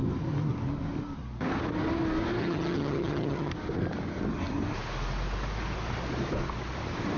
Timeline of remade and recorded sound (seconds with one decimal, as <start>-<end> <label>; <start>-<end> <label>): 0.0-2.4 recorded; 2.4-3.5 remade; 3.5-7.2 recorded

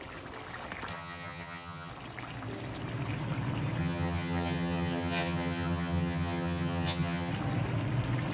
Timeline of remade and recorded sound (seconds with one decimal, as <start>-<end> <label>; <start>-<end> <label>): 0.0-0.9 recorded; 0.9-1.9 remade; 1.9-3.8 recorded; 3.8-7.3 remade; 7.3-8.3 recorded

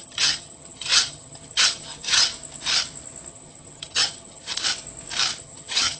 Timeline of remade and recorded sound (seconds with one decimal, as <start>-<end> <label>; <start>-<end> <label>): 0.0-2.3 remade; 2.3-3.3 recorded; 3.3-4.5 remade; 4.5-5.4 recorded; 5.4-6.0 remade

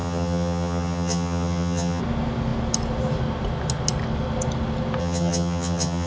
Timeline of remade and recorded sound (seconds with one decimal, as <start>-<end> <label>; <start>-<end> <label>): 0.0-2.0 remade; 2.0-5.0 recorded; 5.0-6.1 remade

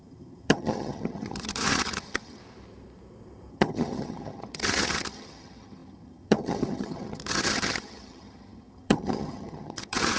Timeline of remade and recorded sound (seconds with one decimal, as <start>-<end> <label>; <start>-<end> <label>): 0.0-2.4 remade; 2.4-3.5 recorded; 3.5-10.2 remade